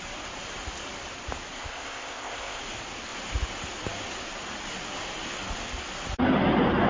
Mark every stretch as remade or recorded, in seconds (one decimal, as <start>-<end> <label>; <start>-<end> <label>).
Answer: 0.0-1.6 recorded; 1.6-2.6 remade; 2.6-6.9 recorded